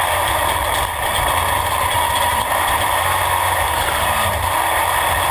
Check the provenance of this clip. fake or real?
real